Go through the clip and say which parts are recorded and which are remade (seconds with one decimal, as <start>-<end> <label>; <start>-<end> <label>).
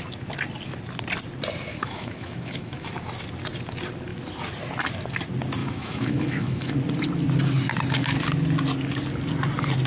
0.0-1.7 recorded; 1.7-2.9 remade; 2.9-5.6 recorded; 5.6-6.7 remade; 6.7-9.9 recorded